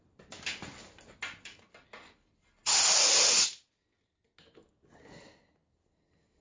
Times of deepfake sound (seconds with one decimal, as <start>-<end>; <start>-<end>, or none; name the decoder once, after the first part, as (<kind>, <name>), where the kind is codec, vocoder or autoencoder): none